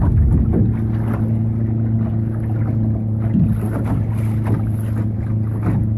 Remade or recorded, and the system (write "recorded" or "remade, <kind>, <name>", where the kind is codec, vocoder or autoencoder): recorded